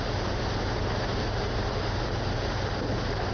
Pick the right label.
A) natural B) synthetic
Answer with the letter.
A